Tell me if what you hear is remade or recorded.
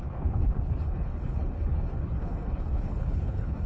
remade